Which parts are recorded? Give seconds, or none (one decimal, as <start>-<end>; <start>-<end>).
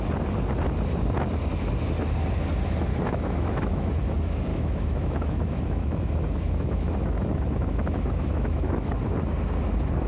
0.0-2.9; 3.9-4.5; 8.9-10.1